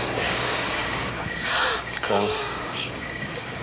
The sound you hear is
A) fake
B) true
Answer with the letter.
A